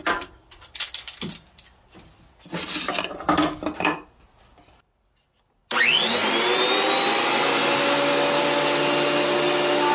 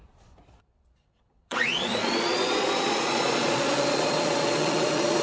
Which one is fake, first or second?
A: second